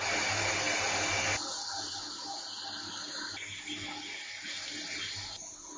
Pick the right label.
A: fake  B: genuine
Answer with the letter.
B